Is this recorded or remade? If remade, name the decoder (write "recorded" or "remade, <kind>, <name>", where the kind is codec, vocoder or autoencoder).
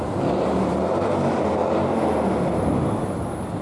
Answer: recorded